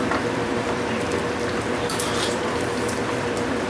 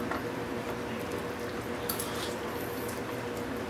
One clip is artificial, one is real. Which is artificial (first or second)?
first